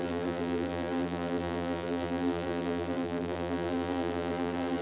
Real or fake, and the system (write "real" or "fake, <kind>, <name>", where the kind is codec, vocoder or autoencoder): fake, vocoder, BigVGAN v2